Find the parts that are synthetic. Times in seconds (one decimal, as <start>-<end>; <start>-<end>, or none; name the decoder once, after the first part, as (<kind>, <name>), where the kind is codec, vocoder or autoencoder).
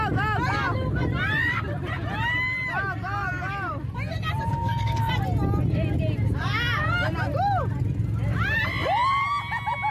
4.5-5.1 (codec, SNAC)